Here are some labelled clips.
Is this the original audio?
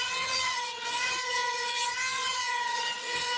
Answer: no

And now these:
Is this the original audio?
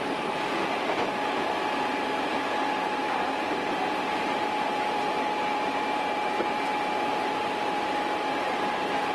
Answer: no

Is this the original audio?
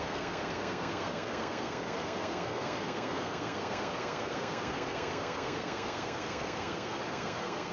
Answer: no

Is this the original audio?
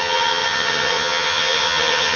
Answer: no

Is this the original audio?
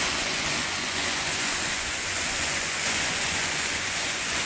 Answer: no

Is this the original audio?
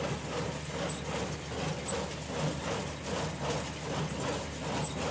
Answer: yes